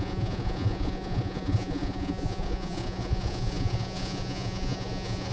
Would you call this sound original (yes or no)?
no